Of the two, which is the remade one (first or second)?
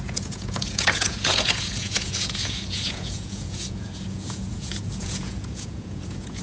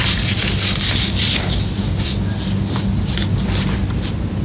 first